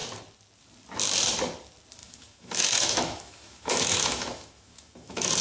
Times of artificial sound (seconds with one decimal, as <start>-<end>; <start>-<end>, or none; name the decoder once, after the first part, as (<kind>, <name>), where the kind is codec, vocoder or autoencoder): 2.0-5.4 (autoencoder, DAC-VAE)